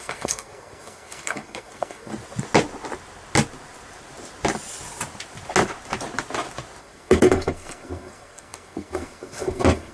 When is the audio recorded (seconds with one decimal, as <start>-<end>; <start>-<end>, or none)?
2.1-6.8